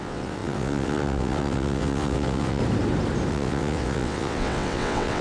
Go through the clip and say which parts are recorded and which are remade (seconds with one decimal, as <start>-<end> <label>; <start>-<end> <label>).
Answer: 0.0-2.6 remade; 2.6-3.3 recorded; 3.3-5.2 remade